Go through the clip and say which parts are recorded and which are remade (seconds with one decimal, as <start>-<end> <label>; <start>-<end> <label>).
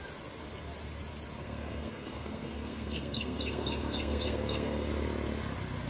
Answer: 0.0-1.4 recorded; 1.4-4.9 remade; 4.9-5.9 recorded